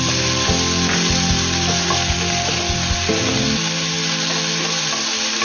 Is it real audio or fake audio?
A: real